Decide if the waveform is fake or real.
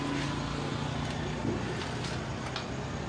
real